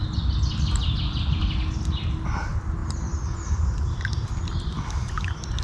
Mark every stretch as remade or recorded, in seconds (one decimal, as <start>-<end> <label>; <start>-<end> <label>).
0.0-5.6 recorded